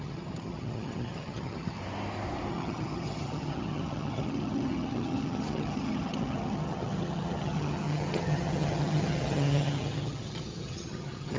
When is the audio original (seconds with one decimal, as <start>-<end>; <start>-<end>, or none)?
1.8-2.5